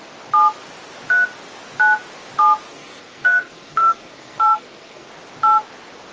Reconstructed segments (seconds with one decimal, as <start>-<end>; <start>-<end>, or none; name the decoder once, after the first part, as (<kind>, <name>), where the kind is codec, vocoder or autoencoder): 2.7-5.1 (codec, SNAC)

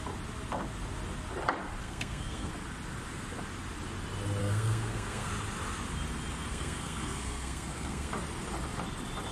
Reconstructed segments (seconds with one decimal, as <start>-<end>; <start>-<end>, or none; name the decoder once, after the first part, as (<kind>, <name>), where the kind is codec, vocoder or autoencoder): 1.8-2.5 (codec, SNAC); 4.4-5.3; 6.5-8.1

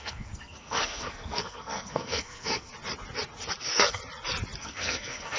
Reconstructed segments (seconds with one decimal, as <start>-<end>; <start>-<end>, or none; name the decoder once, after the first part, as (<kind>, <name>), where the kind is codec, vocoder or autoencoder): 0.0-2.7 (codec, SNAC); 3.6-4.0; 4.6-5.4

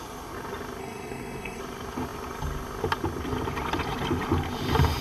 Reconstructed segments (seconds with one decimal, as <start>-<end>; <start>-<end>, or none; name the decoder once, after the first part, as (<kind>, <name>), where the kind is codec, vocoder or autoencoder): 0.8-1.6 (codec, SNAC)